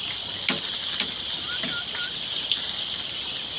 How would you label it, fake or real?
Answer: real